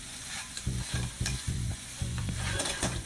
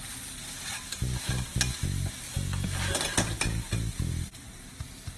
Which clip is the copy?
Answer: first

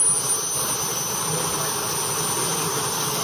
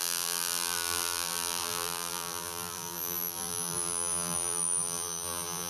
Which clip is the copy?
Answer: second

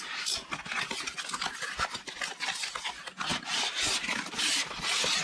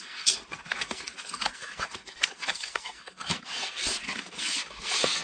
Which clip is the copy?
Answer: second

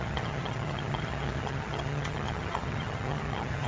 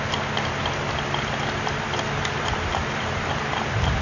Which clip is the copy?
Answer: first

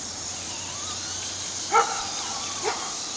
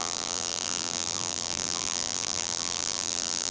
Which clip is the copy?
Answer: second